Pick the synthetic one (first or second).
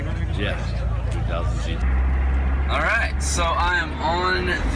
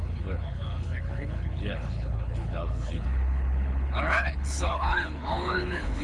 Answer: second